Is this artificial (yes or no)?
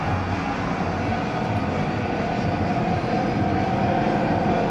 no